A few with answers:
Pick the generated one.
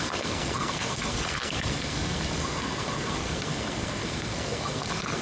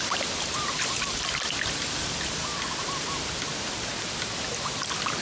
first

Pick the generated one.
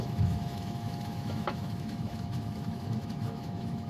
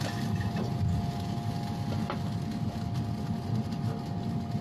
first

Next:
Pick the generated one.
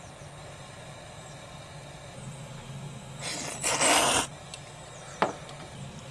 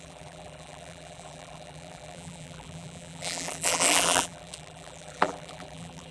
second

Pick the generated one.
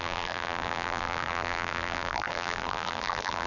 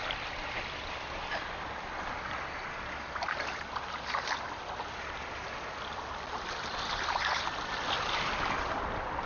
first